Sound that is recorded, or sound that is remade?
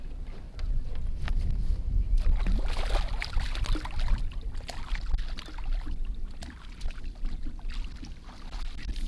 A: recorded